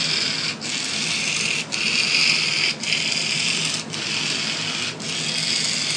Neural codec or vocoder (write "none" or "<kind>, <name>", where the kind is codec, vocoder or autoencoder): none